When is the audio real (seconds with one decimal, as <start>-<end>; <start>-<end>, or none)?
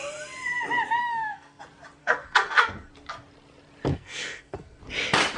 0.0-1.0; 1.6-2.0; 2.9-3.9; 4.8-5.4